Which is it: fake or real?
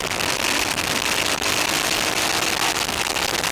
real